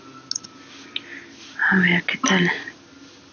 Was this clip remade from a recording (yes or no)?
no